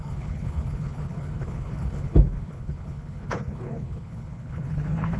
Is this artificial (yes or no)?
yes